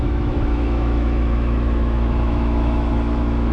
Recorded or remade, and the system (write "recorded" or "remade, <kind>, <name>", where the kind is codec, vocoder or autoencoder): remade, autoencoder, DAC-VAE